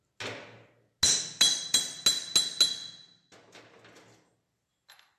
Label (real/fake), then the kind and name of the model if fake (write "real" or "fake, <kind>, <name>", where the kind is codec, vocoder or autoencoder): real